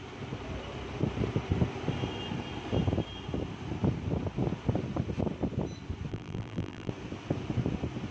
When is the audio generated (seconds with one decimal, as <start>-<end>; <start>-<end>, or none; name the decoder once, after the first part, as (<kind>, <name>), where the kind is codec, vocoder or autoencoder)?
6.1-6.9 (vocoder, BigVGAN v2)